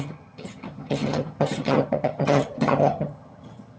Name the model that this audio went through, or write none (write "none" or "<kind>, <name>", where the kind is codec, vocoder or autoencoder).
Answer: vocoder, HiFi-GAN